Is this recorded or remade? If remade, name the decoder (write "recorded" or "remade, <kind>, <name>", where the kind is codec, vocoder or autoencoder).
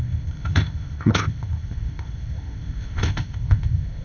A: remade, codec, ZipCodec